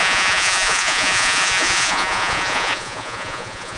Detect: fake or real fake